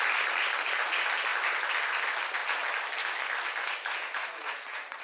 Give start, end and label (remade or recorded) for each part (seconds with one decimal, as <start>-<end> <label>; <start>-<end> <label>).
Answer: 0.0-4.1 recorded; 4.1-5.0 remade